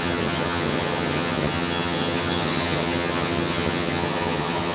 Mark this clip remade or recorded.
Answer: remade